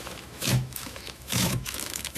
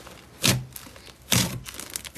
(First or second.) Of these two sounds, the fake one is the first